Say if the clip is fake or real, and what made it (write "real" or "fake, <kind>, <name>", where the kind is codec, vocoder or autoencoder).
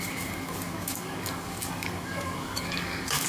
fake, codec, DAC